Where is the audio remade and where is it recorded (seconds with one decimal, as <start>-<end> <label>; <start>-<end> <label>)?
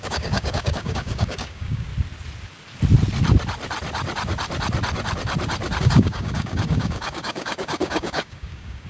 0.0-1.9 remade; 1.9-5.8 recorded; 5.8-8.9 remade